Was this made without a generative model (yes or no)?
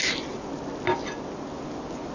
yes